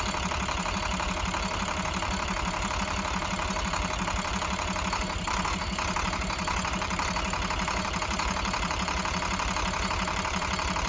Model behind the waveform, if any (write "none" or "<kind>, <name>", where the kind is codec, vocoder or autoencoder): vocoder, BigVGAN v2